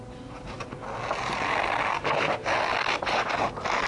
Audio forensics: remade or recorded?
recorded